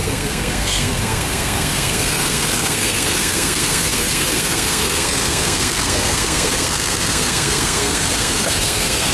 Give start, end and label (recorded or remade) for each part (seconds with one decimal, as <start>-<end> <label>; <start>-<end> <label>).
0.0-9.1 remade